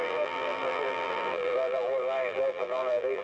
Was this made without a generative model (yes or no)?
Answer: no